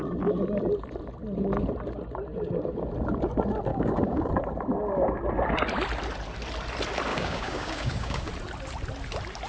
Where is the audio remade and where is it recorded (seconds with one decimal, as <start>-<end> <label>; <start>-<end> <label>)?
0.0-3.7 recorded; 3.7-4.3 remade; 4.3-7.1 recorded; 7.1-8.3 remade; 8.3-9.5 recorded